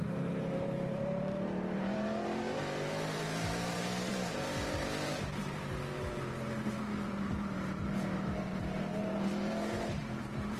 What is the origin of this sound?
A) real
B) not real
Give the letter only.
B